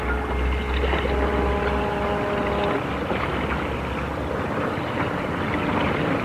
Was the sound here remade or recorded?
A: recorded